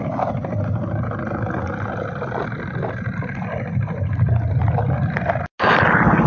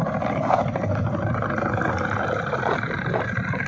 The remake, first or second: second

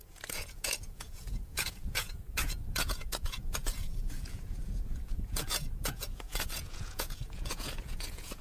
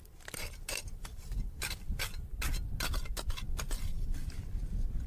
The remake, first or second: first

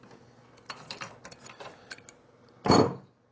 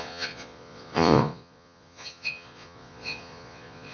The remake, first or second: second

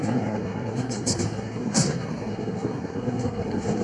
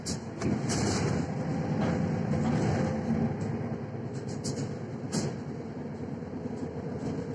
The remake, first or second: first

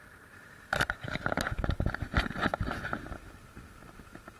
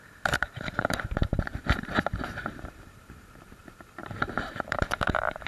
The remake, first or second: second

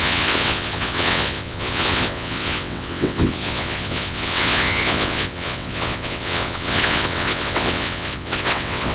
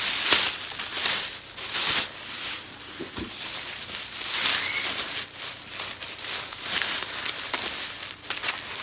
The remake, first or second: first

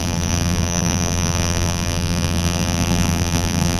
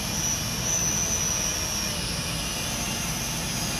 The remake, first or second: first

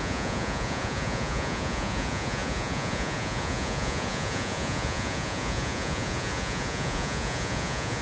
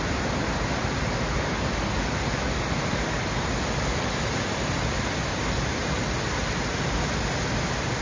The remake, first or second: first